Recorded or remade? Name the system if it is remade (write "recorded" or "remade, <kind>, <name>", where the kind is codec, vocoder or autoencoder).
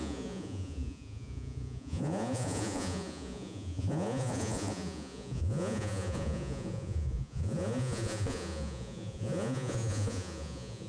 remade, vocoder, Vocos